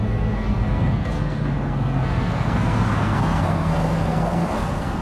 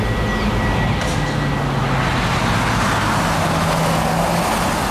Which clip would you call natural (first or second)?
second